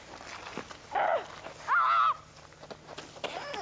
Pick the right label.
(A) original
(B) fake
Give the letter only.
A